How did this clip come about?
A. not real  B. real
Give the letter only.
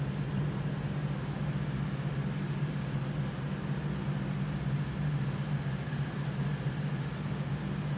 B